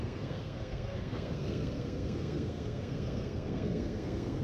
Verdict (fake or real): fake